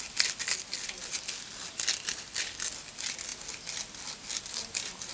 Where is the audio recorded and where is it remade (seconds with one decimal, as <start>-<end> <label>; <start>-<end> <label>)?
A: 0.0-5.1 recorded